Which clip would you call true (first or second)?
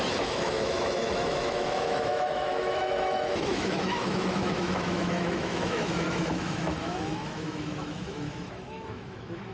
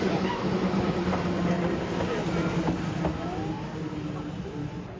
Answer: second